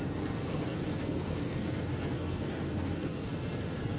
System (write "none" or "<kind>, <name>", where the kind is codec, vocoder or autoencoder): codec, SNAC